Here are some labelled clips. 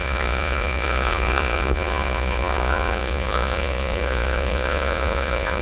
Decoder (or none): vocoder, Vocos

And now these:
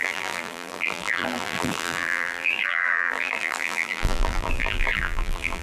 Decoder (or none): vocoder, BigVGAN v2